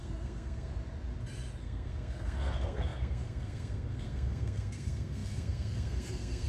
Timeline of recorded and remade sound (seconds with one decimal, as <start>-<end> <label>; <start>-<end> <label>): 0.0-0.7 remade; 0.7-1.6 recorded; 1.6-6.5 remade